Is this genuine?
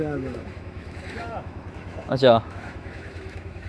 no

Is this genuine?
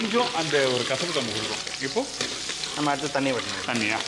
yes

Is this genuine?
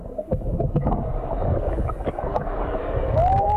no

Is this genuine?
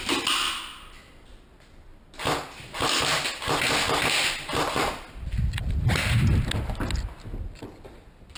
yes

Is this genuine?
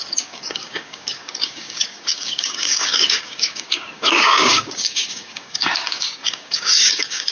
no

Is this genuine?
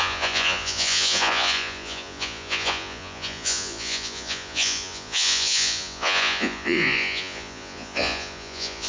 no